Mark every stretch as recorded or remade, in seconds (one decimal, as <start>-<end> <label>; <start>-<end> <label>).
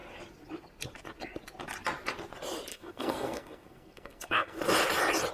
0.0-2.7 recorded; 2.7-4.6 remade; 4.6-5.3 recorded